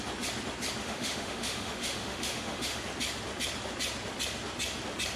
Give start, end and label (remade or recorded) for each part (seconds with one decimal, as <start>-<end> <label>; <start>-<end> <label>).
0.0-0.8 recorded; 0.8-2.8 remade; 2.8-5.2 recorded

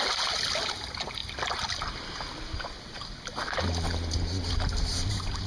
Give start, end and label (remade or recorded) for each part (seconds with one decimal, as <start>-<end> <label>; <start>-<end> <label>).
0.0-5.5 recorded

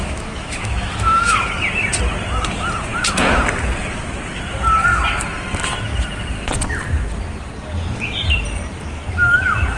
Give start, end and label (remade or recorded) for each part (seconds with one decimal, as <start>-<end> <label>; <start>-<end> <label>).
0.0-1.5 remade; 1.5-9.8 recorded

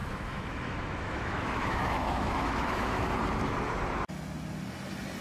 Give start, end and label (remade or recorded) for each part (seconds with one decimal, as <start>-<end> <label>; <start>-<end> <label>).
0.0-3.1 remade; 3.1-5.2 recorded